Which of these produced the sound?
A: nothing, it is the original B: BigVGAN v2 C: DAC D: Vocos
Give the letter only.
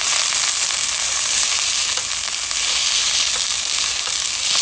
A